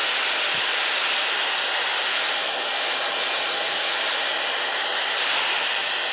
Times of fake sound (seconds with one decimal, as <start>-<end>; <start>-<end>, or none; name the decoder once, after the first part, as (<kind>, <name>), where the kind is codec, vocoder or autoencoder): none